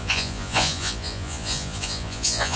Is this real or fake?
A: fake